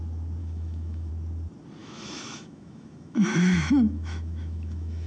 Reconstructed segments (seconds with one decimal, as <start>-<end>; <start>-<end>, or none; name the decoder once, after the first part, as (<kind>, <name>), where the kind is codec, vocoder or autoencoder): 0.4-1.1 (autoencoder, DAC-VAE); 1.8-5.1